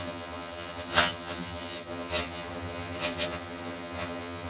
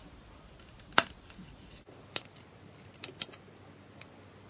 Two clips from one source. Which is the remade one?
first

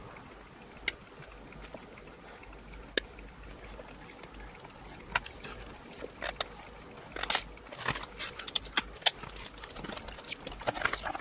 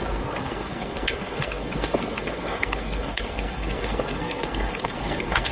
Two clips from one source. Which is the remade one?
second